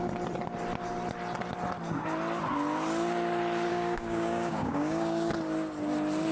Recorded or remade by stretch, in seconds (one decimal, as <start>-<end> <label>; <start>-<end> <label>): 0.0-3.7 recorded; 3.7-5.3 remade; 5.3-6.3 recorded